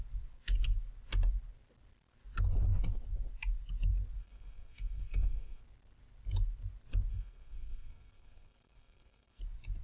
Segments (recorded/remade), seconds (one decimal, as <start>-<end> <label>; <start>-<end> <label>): 0.0-4.2 recorded; 4.2-5.6 remade; 5.6-7.1 recorded; 7.1-9.4 remade; 9.4-9.8 recorded